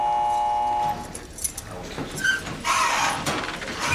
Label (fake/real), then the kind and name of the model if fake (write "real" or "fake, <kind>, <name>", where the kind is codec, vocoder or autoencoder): real